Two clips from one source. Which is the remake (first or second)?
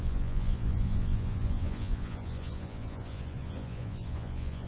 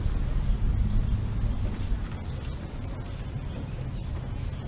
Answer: first